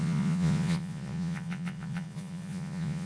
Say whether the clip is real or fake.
fake